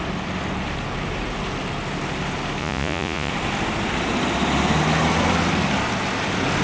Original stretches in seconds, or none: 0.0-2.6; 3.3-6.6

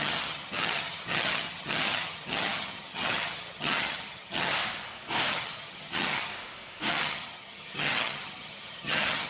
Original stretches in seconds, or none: 4.5-5.3; 6.3-6.9

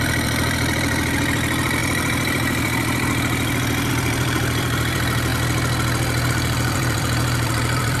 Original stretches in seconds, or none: 5.3-6.3